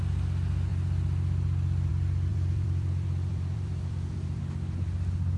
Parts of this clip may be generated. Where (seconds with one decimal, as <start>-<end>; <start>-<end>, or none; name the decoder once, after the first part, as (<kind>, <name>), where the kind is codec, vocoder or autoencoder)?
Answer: 2.3-4.4 (vocoder, BigVGAN v2)